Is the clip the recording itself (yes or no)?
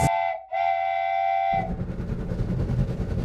yes